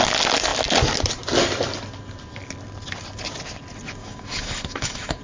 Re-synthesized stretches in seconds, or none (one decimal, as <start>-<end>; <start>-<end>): 4.0-5.2